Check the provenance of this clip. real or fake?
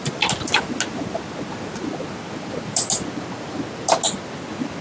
real